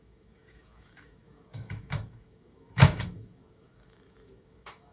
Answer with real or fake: fake